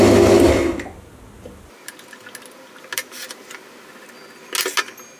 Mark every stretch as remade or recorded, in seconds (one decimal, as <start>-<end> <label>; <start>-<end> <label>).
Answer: 0.0-5.2 recorded